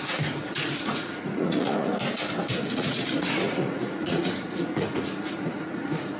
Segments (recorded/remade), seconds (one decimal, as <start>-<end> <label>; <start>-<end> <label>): 0.0-1.9 remade; 1.9-2.6 recorded; 2.6-6.2 remade

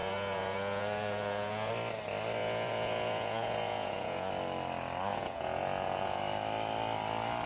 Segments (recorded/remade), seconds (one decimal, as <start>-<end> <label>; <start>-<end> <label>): 0.0-1.7 remade; 1.7-2.4 recorded; 2.4-4.3 remade; 4.3-5.1 recorded; 5.1-6.2 remade; 6.2-7.5 recorded